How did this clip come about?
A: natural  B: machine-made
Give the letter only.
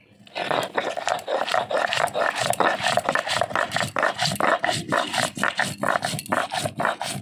A